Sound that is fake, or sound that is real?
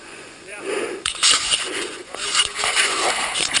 fake